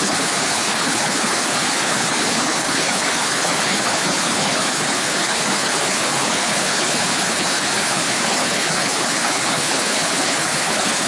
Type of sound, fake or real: fake